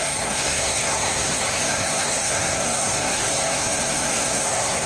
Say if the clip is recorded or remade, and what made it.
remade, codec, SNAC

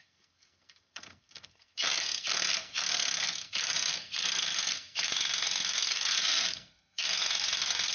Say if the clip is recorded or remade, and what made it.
remade, codec, SNAC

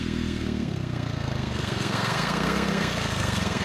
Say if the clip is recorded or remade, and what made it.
remade, codec, SNAC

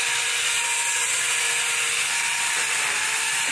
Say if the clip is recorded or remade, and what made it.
recorded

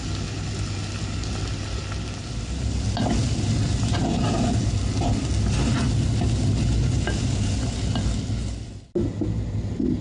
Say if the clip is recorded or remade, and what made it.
recorded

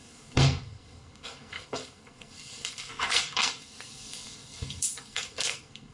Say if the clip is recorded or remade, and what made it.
remade, codec, SNAC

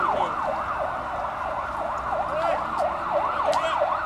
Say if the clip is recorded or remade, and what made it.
recorded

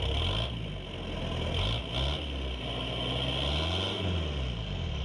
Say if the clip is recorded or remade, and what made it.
recorded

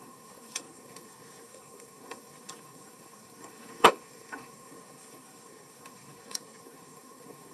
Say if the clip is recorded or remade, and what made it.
remade, codec, SNAC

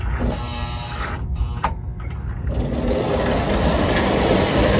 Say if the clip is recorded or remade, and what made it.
recorded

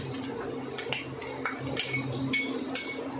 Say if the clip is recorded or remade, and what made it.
recorded